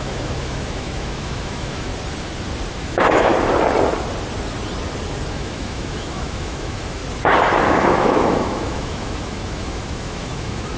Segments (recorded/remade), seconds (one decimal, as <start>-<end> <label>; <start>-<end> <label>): 0.0-1.9 remade; 1.9-2.7 recorded; 2.7-3.3 remade; 3.3-5.3 recorded; 5.3-7.0 remade; 7.0-7.7 recorded; 7.7-10.8 remade

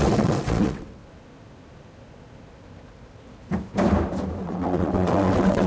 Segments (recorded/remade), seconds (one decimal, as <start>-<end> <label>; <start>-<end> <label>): 0.0-1.0 remade; 1.0-4.4 recorded; 4.4-5.7 remade

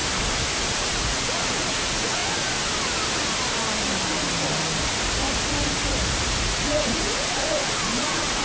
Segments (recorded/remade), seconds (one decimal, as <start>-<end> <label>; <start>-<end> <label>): 0.0-0.6 recorded; 0.6-2.2 remade; 2.2-6.4 recorded; 6.4-8.4 remade

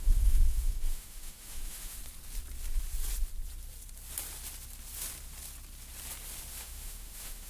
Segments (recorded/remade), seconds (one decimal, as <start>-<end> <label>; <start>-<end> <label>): 0.0-2.0 remade; 2.0-6.5 recorded; 6.5-7.5 remade